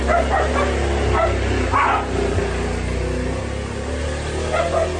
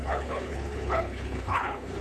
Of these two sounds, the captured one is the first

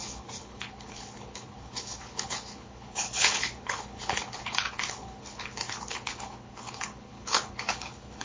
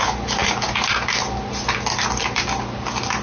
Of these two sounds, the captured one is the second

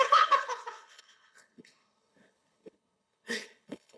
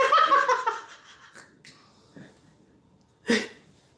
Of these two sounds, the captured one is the second